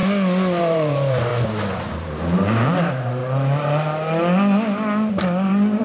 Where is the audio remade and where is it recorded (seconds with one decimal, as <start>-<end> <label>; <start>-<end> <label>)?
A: 0.0-0.6 recorded; 0.6-1.3 remade; 1.3-1.9 recorded; 1.9-3.2 remade; 3.2-5.8 recorded